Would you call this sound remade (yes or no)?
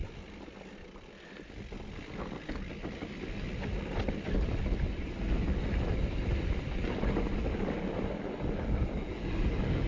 no